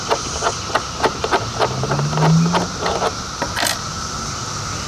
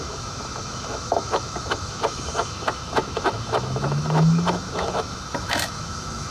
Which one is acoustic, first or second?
first